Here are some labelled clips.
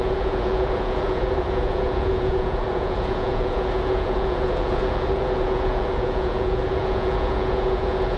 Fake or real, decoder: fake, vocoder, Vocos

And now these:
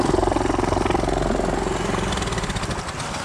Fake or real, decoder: real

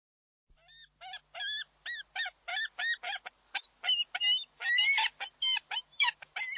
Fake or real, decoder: real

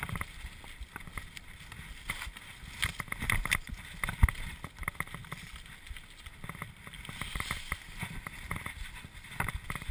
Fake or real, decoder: real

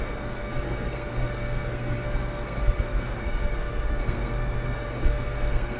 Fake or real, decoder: fake, codec, SNAC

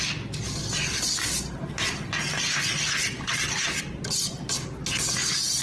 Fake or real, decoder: real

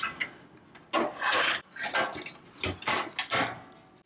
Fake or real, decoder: real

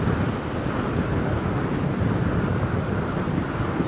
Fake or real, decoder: real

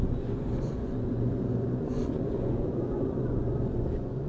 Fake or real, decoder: fake, vocoder, Vocos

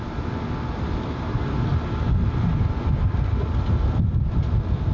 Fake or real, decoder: real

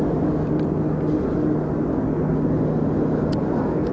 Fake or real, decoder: real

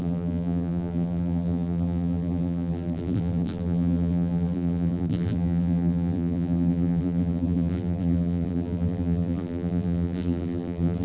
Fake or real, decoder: fake, vocoder, BigVGAN v2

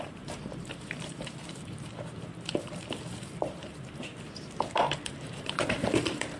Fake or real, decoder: fake, vocoder, BigVGAN v2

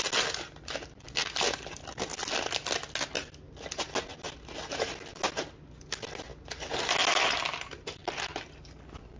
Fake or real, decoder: real